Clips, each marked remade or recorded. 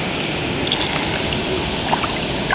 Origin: recorded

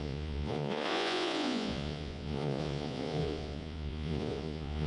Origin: remade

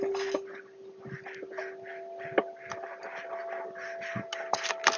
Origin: recorded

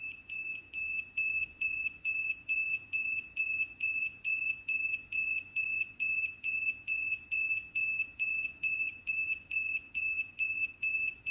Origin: remade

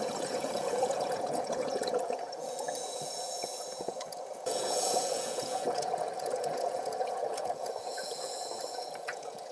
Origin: remade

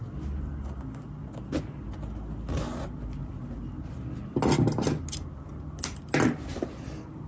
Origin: recorded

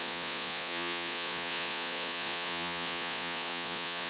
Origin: remade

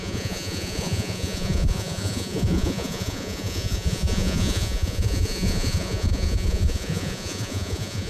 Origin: remade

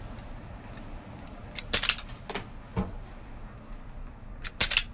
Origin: recorded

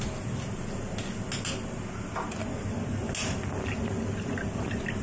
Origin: recorded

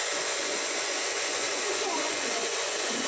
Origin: remade